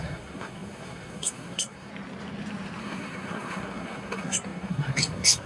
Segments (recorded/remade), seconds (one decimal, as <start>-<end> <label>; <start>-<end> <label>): 0.0-1.9 remade; 1.9-2.8 recorded; 2.8-5.5 remade